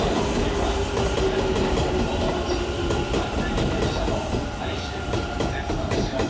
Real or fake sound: real